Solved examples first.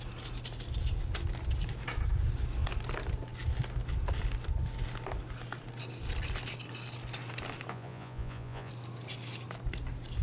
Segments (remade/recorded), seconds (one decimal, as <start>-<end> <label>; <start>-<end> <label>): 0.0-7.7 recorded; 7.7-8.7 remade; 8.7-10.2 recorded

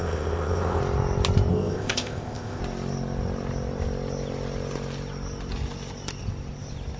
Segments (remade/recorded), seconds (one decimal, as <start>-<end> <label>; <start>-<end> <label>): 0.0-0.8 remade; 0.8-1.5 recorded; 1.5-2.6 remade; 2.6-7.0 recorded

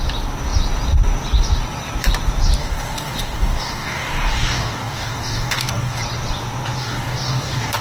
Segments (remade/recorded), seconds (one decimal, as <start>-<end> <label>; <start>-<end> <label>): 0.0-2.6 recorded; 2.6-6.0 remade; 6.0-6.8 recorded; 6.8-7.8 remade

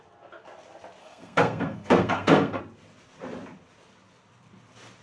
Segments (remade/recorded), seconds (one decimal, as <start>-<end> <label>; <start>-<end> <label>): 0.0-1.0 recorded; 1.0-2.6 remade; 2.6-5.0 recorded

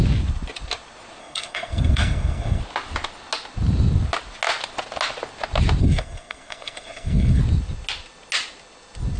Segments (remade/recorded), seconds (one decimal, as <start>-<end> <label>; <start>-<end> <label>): 0.0-1.2 recorded; 1.2-2.6 remade; 2.6-5.8 recorded; 5.8-7.4 remade; 7.4-9.2 recorded

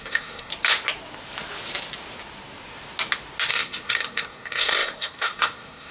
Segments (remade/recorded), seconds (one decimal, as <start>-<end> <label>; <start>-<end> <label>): 0.0-0.5 remade; 0.5-3.5 recorded; 3.5-5.9 remade

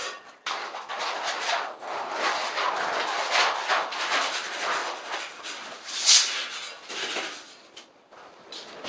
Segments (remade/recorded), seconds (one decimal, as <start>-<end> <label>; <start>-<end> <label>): 0.0-8.9 recorded